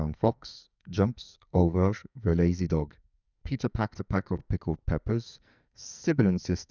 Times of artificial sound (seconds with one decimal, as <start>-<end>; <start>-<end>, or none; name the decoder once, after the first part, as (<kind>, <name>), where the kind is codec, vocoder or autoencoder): 0.0-4.4 (codec, SNAC); 5.1-6.7